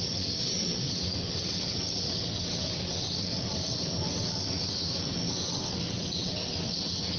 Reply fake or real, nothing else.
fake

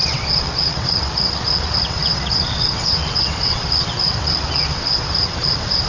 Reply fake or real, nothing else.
fake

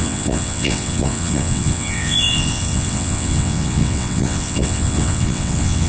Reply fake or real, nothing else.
fake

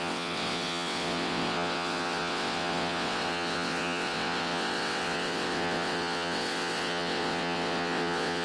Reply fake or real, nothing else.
fake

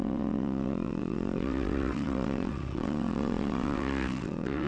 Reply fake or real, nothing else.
fake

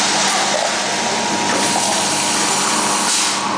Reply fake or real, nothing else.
real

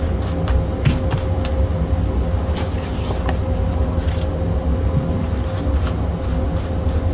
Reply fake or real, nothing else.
real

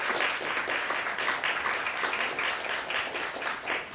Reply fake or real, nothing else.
real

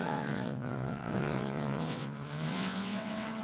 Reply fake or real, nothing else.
fake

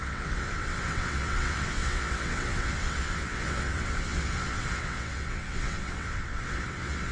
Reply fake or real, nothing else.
fake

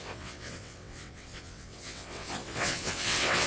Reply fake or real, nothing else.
fake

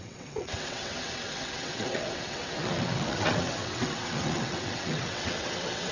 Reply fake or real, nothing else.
fake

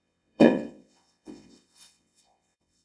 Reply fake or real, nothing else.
fake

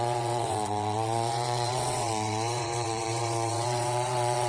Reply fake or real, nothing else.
fake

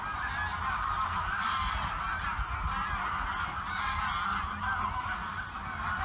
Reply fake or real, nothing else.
real